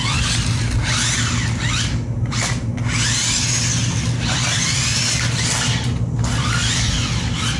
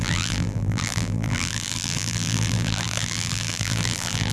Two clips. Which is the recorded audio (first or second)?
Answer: first